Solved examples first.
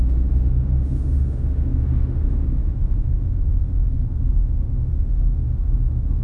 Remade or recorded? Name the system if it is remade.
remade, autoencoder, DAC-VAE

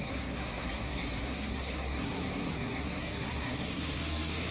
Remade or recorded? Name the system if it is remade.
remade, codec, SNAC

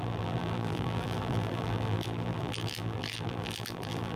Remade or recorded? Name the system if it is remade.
remade, vocoder, BigVGAN v2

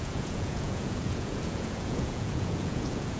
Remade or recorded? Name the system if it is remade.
remade, vocoder, Vocos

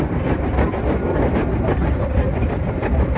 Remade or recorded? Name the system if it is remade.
recorded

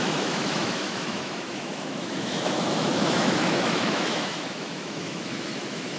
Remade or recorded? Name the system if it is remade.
remade, autoencoder, DAC-VAE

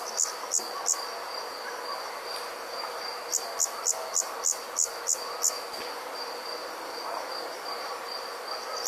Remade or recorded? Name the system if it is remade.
recorded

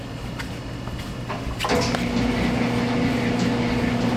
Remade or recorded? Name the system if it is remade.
recorded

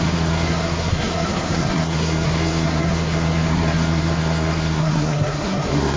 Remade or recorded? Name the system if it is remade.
remade, codec, SNAC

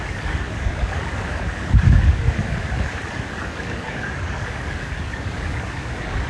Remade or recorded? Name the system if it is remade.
remade, codec, DAC